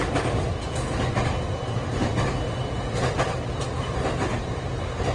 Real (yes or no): yes